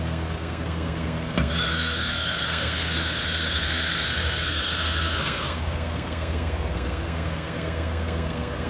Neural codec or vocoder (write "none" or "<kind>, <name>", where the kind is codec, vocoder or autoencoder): codec, SNAC